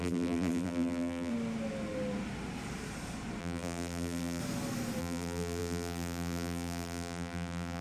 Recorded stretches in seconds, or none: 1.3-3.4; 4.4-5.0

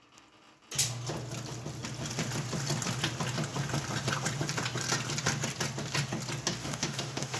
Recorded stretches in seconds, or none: 0.0-6.6

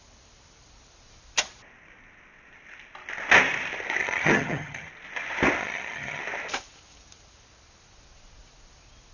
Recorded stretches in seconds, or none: 0.0-4.0; 4.9-5.6; 6.2-9.1